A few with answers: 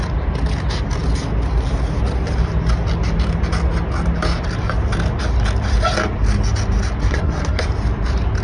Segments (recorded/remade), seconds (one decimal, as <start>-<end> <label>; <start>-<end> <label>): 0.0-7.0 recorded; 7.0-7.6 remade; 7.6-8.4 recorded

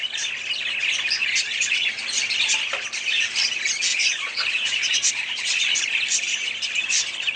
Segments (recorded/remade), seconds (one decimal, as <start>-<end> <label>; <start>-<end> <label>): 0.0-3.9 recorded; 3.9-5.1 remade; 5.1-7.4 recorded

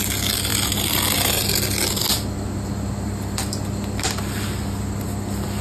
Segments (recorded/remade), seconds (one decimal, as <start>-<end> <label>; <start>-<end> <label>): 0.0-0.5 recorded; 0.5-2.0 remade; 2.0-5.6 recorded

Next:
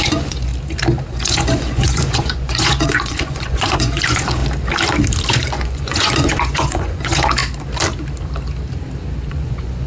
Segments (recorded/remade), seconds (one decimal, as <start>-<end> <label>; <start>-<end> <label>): 0.0-0.5 remade; 0.5-1.1 recorded; 1.1-4.4 remade; 4.4-5.3 recorded; 5.3-7.4 remade; 7.4-9.3 recorded; 9.3-9.9 remade

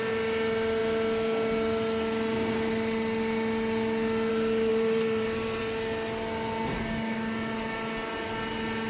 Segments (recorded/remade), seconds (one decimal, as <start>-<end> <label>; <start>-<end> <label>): 0.0-4.7 recorded; 4.7-5.6 remade; 5.6-8.9 recorded

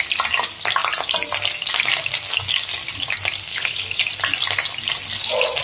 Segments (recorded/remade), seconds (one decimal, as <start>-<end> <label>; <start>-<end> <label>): 0.0-3.5 recorded; 3.5-4.0 remade; 4.0-5.6 recorded

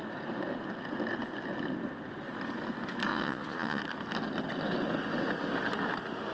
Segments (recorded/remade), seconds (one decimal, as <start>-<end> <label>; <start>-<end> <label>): 0.0-3.1 recorded; 3.1-3.8 remade; 3.8-6.3 recorded

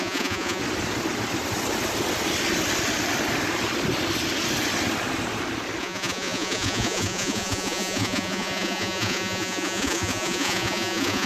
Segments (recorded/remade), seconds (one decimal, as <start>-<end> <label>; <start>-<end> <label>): 0.0-0.6 remade; 0.6-5.8 recorded; 5.8-11.3 remade